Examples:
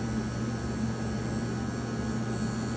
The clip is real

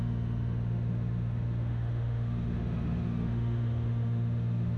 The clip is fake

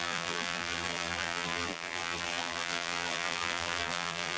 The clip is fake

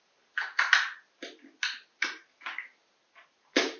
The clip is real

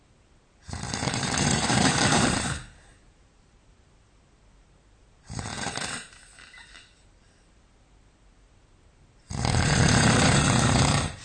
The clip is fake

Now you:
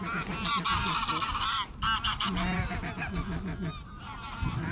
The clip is real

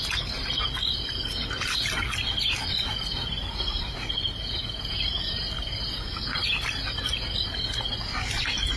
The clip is real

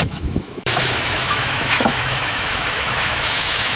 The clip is fake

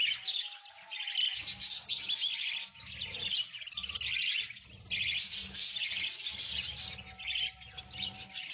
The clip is real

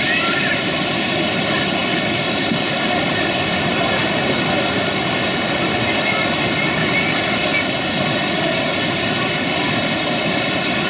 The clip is real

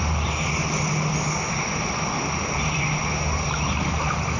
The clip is real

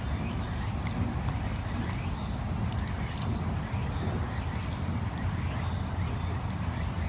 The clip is real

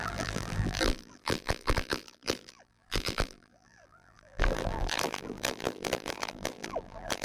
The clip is fake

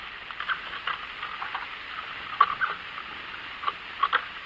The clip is real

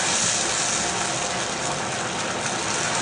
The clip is real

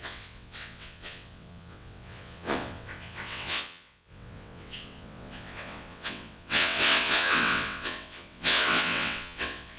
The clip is fake